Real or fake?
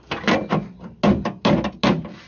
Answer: real